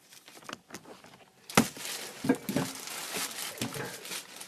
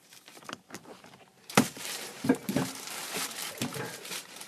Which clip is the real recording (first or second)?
first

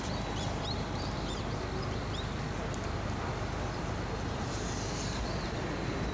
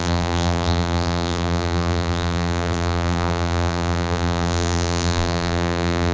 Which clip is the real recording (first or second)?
first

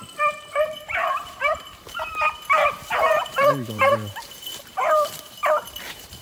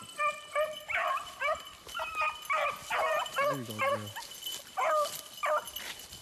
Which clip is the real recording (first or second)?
second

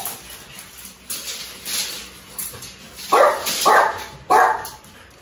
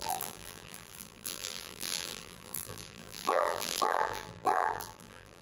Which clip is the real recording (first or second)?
first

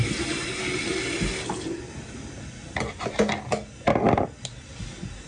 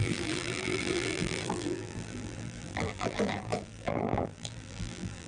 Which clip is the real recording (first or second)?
first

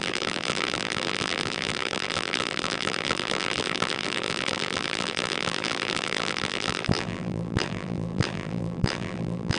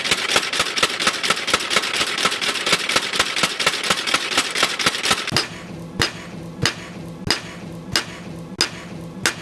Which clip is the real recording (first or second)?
second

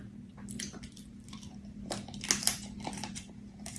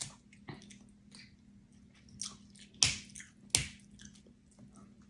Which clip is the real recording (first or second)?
second